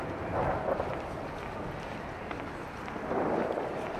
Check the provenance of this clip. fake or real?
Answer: real